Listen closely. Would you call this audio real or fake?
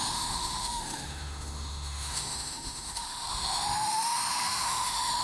fake